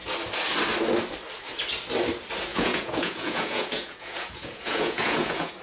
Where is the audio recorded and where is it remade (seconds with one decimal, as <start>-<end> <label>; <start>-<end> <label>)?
0.0-2.5 recorded; 2.5-5.6 remade